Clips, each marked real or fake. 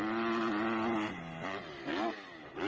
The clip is real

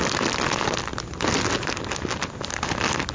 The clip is real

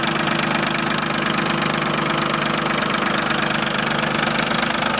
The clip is real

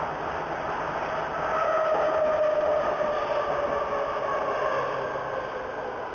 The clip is real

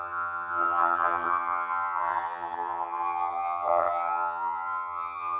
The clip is fake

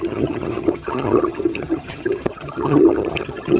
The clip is fake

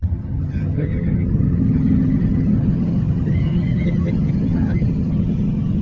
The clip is fake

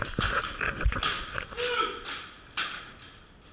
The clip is real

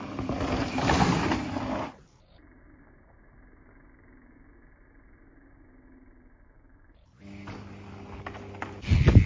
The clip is real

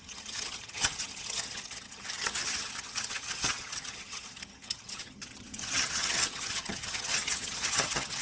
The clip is fake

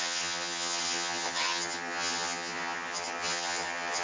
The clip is fake